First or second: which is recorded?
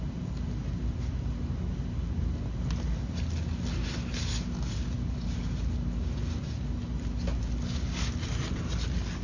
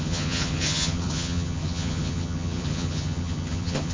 first